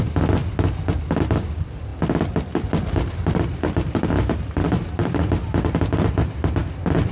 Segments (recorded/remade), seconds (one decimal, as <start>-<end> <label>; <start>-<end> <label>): 0.0-7.1 remade